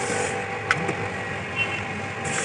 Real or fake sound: real